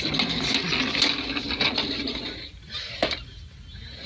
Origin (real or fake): real